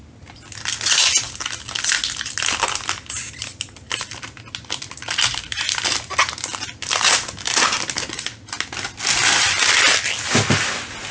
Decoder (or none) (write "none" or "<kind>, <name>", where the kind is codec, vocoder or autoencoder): none